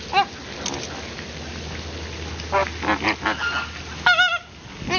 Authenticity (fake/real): real